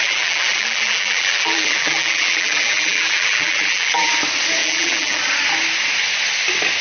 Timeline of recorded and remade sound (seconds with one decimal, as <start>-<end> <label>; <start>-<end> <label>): 0.0-4.1 remade; 4.1-4.6 recorded; 4.6-5.2 remade; 5.2-6.8 recorded